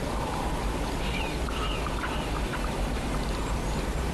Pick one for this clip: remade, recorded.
remade